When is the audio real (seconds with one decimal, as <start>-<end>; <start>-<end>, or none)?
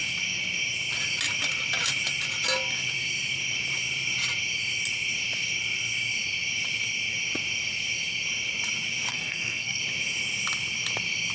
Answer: 0.0-9.1; 9.8-11.3